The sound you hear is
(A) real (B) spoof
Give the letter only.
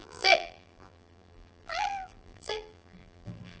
B